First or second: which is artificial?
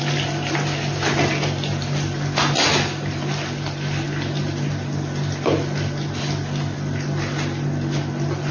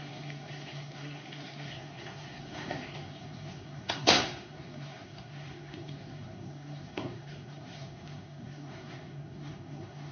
second